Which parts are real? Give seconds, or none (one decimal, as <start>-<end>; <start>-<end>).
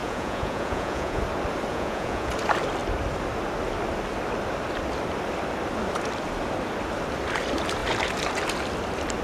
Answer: 1.2-1.7; 2.3-9.2